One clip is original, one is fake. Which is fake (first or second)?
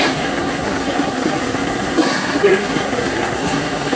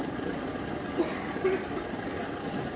first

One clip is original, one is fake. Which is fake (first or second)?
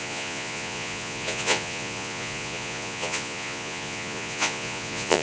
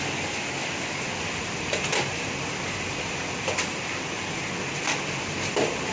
first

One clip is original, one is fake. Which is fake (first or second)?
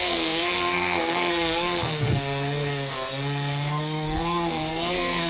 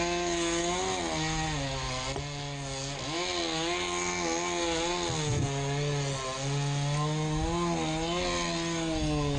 first